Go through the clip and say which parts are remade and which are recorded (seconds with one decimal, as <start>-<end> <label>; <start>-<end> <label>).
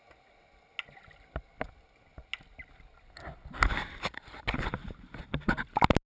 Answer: 0.0-6.1 recorded